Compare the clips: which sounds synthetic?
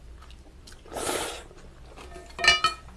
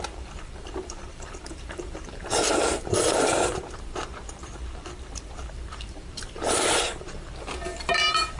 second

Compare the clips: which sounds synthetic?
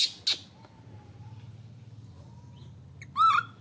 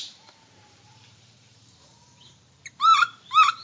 second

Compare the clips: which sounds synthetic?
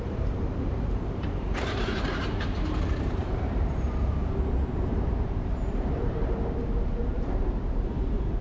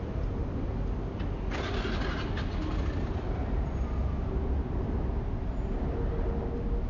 first